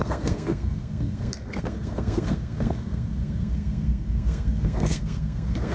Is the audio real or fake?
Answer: fake